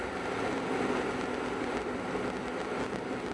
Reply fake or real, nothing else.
real